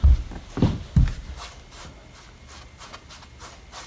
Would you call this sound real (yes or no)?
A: yes